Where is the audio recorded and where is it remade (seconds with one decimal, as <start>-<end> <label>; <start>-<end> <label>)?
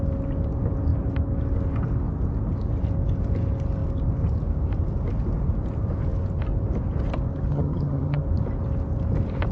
0.0-7.5 recorded; 7.5-8.2 remade; 8.2-9.5 recorded